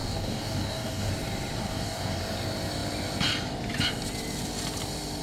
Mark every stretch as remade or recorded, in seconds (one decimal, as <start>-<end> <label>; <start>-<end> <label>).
0.0-1.1 remade; 1.1-1.6 recorded; 1.6-2.2 remade; 2.2-5.2 recorded